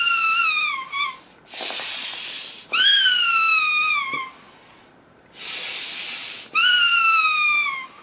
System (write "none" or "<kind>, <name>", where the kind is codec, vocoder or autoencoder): none